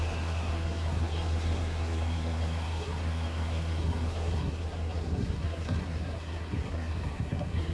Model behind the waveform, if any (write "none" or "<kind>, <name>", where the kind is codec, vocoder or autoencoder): codec, SNAC